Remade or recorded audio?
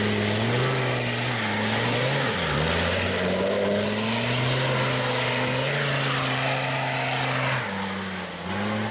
recorded